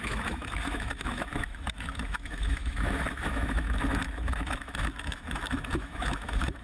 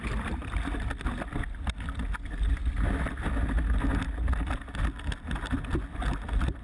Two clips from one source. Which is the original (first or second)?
second